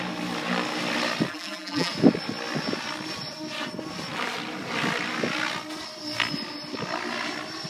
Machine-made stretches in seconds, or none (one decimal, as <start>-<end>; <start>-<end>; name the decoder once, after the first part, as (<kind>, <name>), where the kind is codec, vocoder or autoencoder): 1.3-1.9 (vocoder, BigVGAN v2)